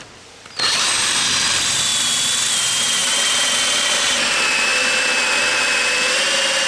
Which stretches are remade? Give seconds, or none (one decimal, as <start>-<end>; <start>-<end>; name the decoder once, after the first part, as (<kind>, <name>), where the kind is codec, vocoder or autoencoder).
none